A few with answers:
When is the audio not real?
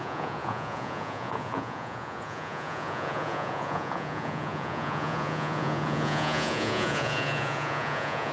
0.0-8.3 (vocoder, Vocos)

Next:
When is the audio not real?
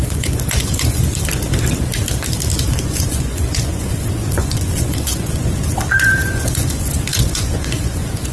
0.0-1.0 (vocoder, Vocos); 2.8-8.3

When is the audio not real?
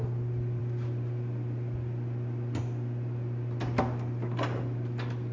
none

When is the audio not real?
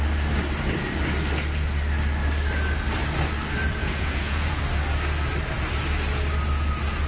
3.8-4.6 (vocoder, Vocos)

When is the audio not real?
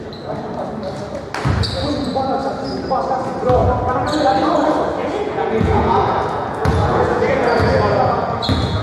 5.0-8.8 (vocoder, Vocos)